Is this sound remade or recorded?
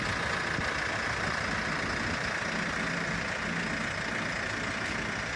recorded